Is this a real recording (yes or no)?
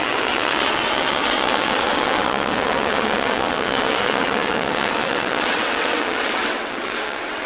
no